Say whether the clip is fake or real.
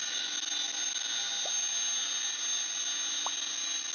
real